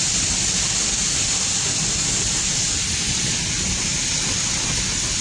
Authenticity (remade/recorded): recorded